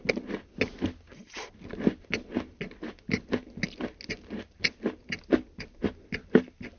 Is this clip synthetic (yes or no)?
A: no